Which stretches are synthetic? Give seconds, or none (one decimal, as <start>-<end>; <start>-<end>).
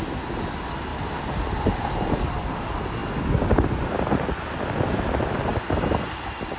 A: 0.9-1.9